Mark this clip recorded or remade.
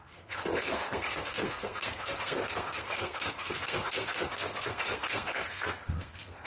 remade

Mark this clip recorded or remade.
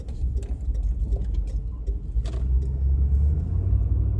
recorded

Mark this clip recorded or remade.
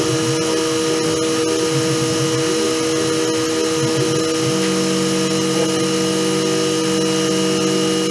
recorded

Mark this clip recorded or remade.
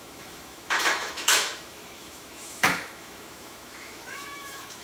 remade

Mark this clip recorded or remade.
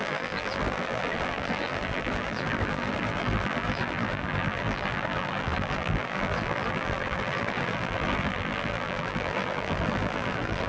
remade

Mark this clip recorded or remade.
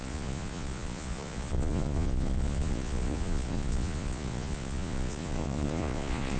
remade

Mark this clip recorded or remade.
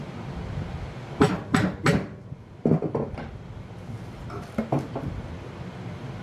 recorded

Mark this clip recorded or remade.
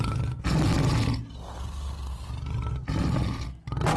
recorded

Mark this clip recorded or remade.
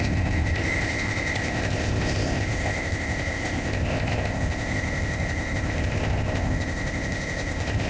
remade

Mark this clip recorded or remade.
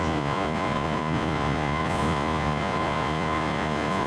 remade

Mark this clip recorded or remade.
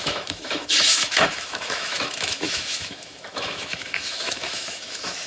remade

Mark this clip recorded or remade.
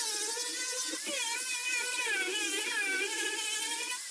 recorded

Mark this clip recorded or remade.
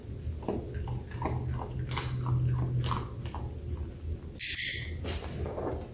recorded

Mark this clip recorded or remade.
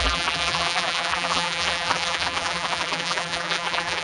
remade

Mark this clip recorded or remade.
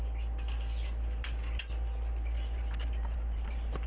recorded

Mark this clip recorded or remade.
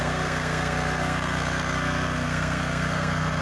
remade